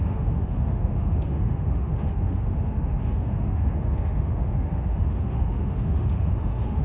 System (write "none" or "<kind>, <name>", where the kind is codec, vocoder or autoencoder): autoencoder, DAC-VAE